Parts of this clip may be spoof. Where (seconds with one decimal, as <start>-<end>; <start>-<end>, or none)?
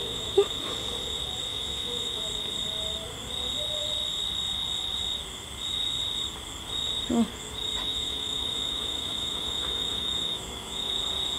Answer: 0.0-0.5; 1.5-2.2; 7.9-11.0